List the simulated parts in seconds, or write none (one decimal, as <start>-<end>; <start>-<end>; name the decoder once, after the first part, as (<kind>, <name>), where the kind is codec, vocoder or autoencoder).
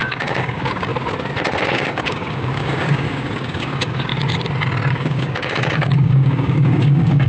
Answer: 0.0-0.9 (codec, DAC); 1.7-4.1; 4.9-7.3